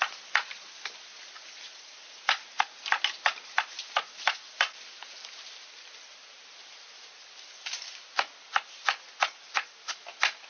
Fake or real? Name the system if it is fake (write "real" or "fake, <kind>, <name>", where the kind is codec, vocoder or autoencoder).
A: real